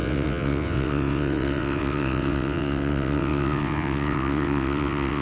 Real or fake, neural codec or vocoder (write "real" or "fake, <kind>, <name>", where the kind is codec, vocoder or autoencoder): fake, vocoder, WaveNeXt